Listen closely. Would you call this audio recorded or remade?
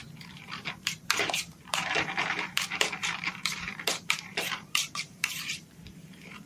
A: remade